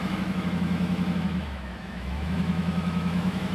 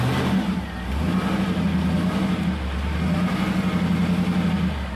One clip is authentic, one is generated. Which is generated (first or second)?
first